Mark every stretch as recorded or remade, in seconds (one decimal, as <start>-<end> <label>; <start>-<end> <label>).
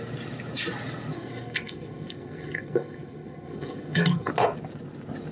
0.0-1.1 recorded; 1.1-4.3 remade; 4.3-5.3 recorded